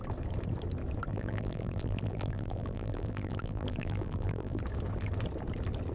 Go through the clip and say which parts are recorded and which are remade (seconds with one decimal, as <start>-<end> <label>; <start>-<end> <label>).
0.0-1.1 recorded; 1.1-4.6 remade; 4.6-5.9 recorded